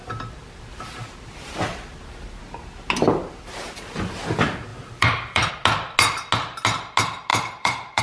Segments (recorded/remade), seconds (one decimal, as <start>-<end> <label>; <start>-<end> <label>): 0.0-4.7 recorded; 4.7-5.5 remade; 5.5-7.3 recorded; 7.3-8.0 remade